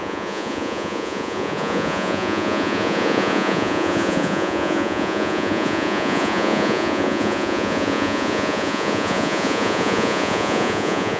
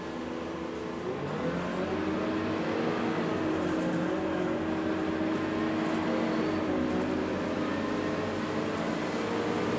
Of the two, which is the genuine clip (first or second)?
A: second